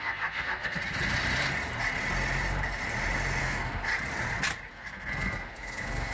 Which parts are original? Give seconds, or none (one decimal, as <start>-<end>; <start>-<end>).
0.8-3.4; 3.9-4.7